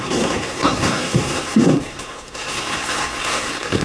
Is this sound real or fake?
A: fake